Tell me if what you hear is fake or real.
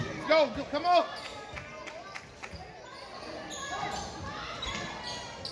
real